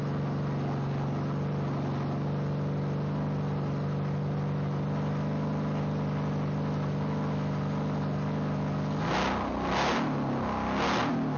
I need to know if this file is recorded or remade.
recorded